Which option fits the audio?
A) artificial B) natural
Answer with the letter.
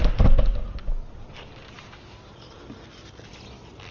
B